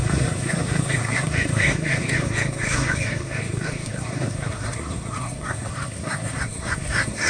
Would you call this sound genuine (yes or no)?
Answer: no